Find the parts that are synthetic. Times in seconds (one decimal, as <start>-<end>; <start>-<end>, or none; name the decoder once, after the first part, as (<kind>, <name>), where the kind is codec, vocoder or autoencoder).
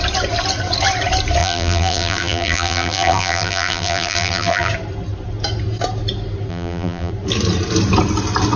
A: 1.4-4.7 (vocoder, BigVGAN v2); 6.5-7.1